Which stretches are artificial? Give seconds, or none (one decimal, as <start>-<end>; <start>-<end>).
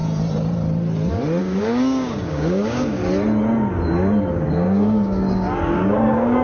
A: 1.4-3.0; 4.3-6.4